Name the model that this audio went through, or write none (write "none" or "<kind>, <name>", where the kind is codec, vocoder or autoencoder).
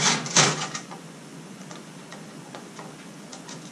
vocoder, Vocos